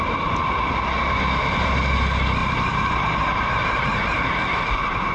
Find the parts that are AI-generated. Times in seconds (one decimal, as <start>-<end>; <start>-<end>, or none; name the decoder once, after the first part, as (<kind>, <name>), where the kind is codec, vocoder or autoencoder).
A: 2.4-4.0 (vocoder, BigVGAN v2)